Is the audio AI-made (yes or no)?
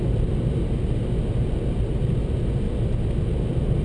no